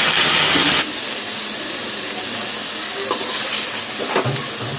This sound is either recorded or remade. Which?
recorded